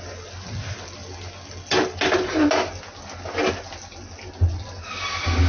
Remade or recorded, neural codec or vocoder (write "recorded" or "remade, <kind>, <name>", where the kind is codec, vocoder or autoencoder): recorded